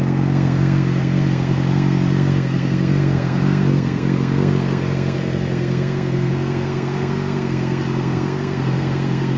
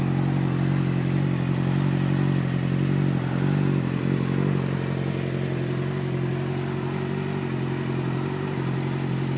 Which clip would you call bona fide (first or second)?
second